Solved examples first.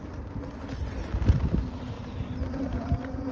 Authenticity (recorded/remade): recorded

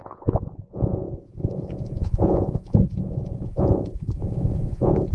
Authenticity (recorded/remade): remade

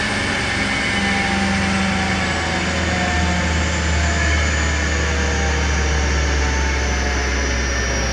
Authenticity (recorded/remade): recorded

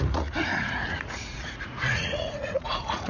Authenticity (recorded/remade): remade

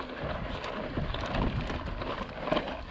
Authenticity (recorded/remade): recorded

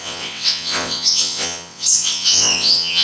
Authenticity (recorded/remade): remade